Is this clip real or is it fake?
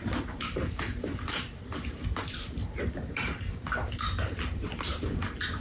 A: fake